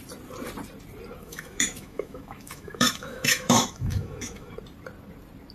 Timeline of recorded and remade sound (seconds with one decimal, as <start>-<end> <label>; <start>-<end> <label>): 0.0-1.2 recorded; 1.2-4.5 remade; 4.5-5.5 recorded